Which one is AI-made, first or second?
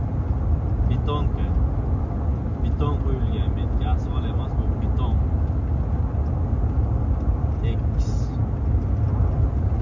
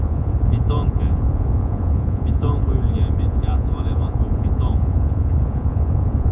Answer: second